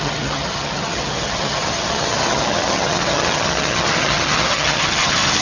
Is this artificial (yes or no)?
yes